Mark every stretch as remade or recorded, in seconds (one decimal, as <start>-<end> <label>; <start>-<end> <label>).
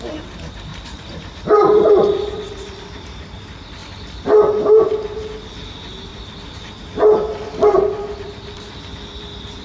0.0-0.7 recorded; 0.7-2.4 remade; 2.4-6.1 recorded; 6.1-9.6 remade